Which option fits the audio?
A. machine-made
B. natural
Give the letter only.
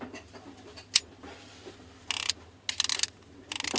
B